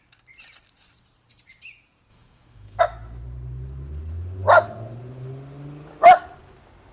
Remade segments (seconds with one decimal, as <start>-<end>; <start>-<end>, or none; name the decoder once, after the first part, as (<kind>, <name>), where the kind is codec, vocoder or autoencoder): 2.1-2.8 (autoencoder, DAC-VAE)